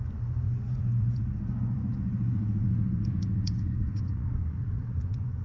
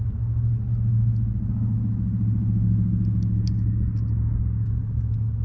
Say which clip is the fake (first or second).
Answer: first